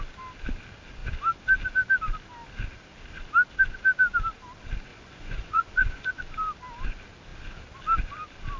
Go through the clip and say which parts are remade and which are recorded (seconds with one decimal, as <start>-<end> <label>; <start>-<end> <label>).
0.0-4.9 recorded; 4.9-6.2 remade; 6.2-8.6 recorded